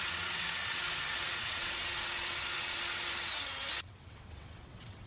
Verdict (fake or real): fake